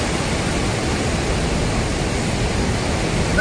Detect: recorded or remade recorded